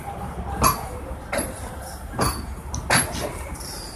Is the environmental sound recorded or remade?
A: recorded